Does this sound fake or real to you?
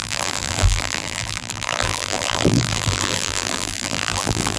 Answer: fake